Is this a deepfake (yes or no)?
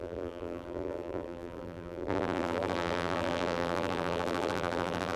yes